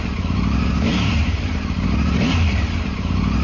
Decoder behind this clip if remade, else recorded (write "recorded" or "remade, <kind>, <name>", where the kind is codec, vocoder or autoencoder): remade, vocoder, BigVGAN v2